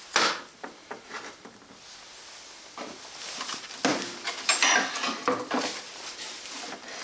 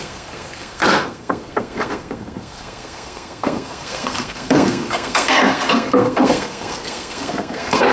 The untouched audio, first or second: first